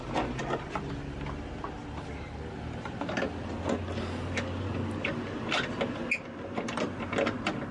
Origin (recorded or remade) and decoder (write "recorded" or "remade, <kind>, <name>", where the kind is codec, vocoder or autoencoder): recorded